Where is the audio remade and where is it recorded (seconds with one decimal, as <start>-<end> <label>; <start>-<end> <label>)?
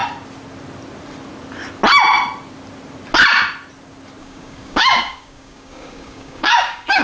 0.0-4.2 recorded; 4.2-7.0 remade